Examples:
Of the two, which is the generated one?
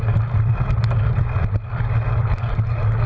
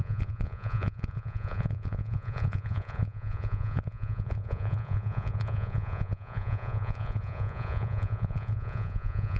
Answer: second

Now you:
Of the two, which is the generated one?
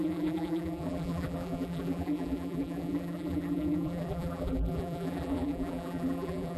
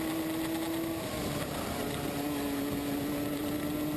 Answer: first